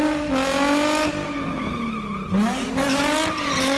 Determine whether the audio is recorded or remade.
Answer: recorded